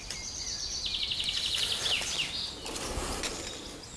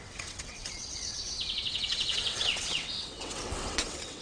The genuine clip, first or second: first